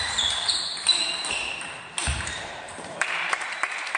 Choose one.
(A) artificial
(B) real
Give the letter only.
A